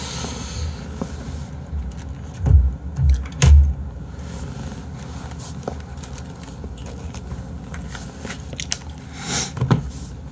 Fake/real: real